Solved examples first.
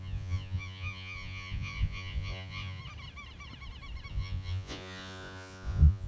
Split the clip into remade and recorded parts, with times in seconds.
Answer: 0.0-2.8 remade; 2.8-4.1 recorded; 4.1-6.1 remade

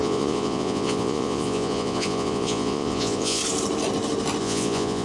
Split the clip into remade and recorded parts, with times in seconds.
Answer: 0.0-3.4 remade; 3.4-4.4 recorded; 4.4-5.0 remade